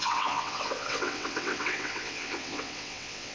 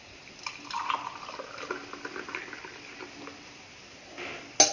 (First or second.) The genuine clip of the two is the second